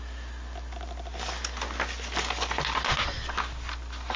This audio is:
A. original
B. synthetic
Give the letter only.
A